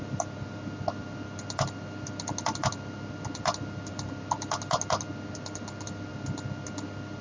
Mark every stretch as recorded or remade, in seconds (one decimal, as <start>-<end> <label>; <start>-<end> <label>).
0.0-7.2 recorded